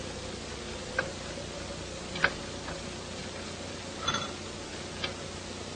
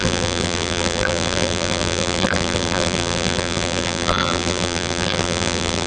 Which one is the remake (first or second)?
second